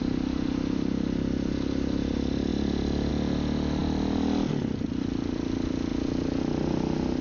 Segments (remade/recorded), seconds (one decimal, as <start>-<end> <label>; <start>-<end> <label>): 0.0-2.5 recorded; 2.5-3.1 remade; 3.1-7.2 recorded